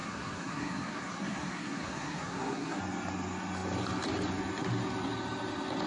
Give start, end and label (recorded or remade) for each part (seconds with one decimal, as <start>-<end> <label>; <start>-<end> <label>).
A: 0.0-2.8 remade; 2.8-5.9 recorded